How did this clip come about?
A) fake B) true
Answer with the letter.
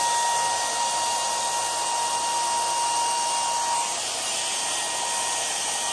B